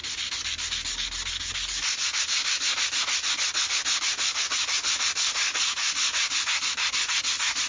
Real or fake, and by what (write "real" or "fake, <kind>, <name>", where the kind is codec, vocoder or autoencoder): real